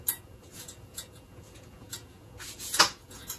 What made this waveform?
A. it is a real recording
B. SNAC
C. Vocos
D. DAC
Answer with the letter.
C